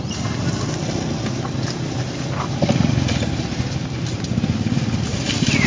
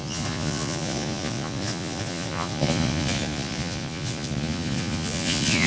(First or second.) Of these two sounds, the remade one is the second